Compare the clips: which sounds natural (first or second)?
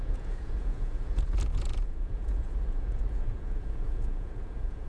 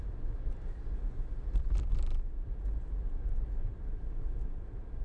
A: second